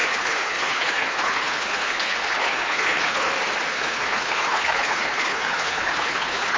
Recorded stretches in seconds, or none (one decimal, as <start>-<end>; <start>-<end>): 3.3-3.7